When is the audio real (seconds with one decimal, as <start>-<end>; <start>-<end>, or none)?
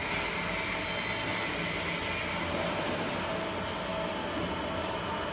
0.0-5.3